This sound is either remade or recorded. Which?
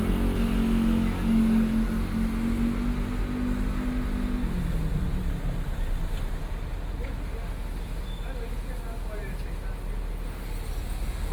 recorded